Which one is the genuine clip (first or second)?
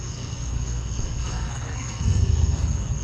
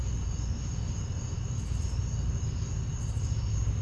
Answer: second